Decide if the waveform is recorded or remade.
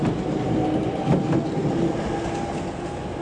recorded